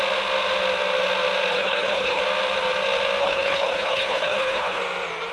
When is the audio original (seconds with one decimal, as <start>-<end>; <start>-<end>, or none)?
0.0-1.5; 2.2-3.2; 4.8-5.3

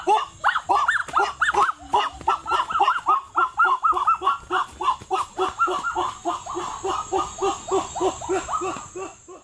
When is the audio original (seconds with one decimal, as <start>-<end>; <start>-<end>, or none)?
0.0-9.4

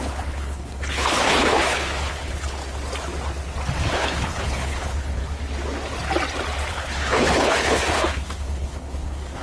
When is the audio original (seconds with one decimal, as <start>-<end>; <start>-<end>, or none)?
2.6-3.9; 5.2-6.7

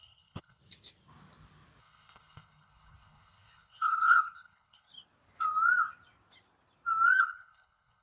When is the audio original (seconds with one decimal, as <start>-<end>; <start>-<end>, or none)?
0.6-1.8; 4.9-7.2